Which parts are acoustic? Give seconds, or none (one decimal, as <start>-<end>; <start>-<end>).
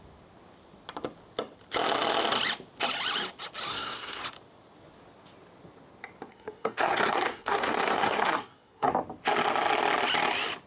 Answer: 0.0-3.7; 4.2-6.3; 8.9-10.7